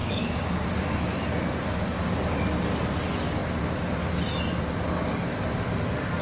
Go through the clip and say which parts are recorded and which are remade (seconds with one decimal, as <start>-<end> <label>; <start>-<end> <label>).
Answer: 0.0-0.5 remade; 0.5-6.2 recorded